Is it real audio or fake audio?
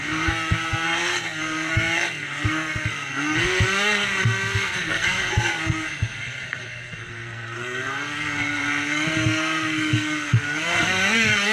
fake